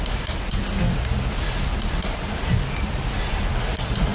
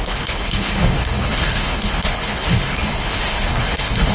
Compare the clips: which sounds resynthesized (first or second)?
second